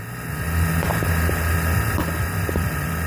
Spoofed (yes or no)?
no